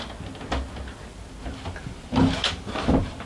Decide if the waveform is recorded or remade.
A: recorded